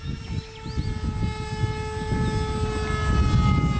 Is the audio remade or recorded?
recorded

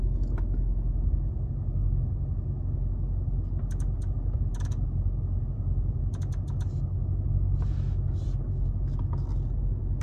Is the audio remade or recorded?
recorded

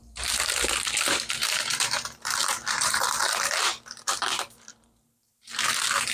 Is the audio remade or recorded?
remade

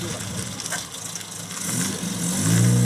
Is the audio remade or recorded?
recorded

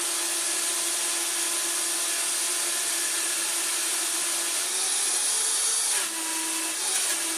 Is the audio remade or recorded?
recorded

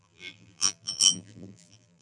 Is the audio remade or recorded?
remade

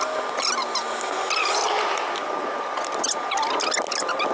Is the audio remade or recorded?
recorded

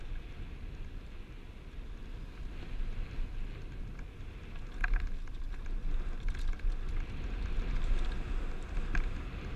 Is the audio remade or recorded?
recorded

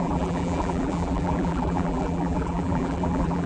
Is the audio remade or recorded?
remade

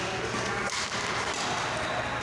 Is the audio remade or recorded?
recorded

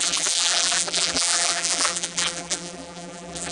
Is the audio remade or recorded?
remade